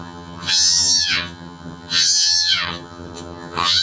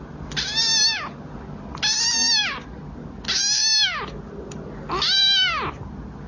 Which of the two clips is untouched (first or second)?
second